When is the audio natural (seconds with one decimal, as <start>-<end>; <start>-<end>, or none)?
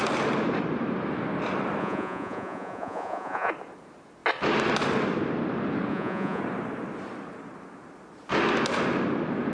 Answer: 0.0-1.8; 3.5-5.9; 6.4-9.5